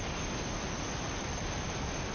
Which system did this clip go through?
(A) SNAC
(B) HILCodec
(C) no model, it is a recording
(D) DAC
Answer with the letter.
C